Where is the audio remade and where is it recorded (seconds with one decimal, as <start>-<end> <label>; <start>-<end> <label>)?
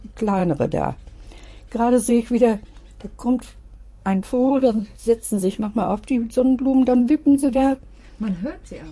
0.0-3.6 recorded; 3.6-5.7 remade; 5.7-7.0 recorded; 7.0-7.8 remade; 7.8-8.9 recorded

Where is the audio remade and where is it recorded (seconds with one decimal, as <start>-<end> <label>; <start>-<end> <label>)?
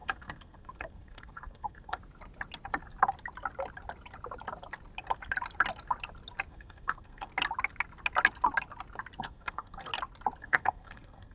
0.0-2.0 remade; 2.0-6.5 recorded; 6.5-7.3 remade; 7.3-9.2 recorded; 9.2-9.9 remade; 9.9-10.4 recorded; 10.4-11.3 remade